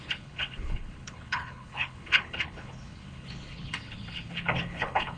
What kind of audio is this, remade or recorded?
remade